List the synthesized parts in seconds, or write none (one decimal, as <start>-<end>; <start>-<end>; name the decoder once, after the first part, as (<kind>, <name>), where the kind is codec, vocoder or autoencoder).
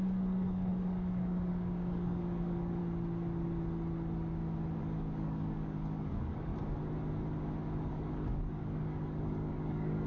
0.0-2.8 (codec, DAC); 4.8-6.5; 7.9-10.1